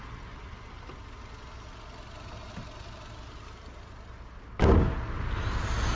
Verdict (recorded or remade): recorded